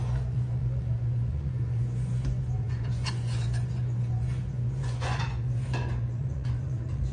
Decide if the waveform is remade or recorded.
remade